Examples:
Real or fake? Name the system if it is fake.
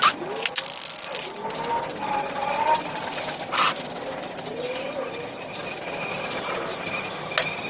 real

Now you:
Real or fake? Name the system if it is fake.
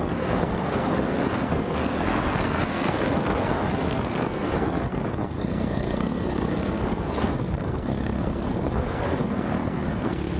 fake, codec, SNAC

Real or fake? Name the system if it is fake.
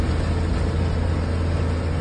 real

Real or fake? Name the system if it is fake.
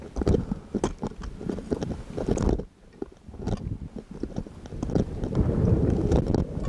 real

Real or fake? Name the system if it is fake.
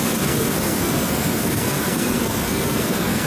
fake, codec, SNAC